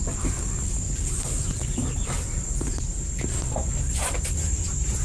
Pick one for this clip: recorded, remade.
recorded